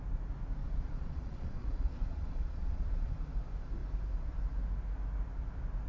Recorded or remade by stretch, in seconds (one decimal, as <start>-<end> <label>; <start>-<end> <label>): 0.0-0.6 recorded; 0.6-3.1 remade; 3.1-5.9 recorded